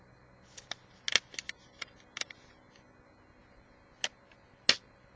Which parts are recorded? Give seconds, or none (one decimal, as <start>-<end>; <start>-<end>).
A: 0.0-5.2

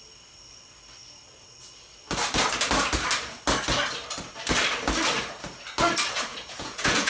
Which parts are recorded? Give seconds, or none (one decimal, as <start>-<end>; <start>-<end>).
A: 0.0-6.3